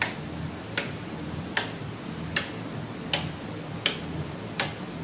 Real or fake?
real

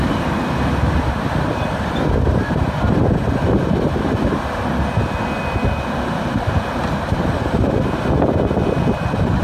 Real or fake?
real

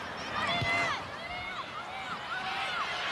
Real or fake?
real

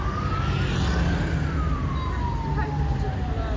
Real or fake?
real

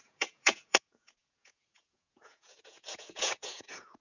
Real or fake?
fake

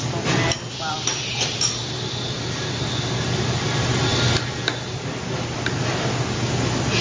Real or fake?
real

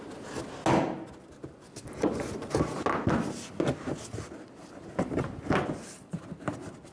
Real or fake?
real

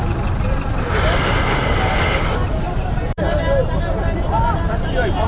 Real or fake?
fake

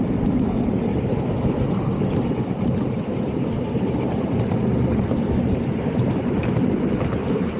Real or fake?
real